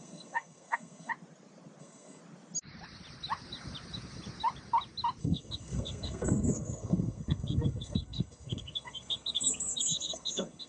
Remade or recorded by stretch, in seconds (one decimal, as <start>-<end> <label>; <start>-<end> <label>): 0.0-1.1 remade; 1.1-1.8 recorded; 1.8-2.2 remade; 2.2-5.2 recorded; 5.2-10.7 remade